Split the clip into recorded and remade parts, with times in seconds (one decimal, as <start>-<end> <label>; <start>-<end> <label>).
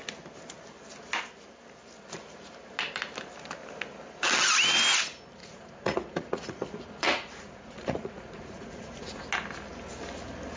0.0-5.4 recorded; 5.4-9.2 remade; 9.2-10.6 recorded